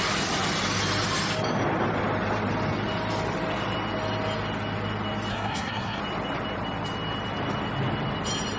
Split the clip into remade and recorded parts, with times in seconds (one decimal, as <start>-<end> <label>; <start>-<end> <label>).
0.0-5.3 recorded; 5.3-6.0 remade; 6.0-8.6 recorded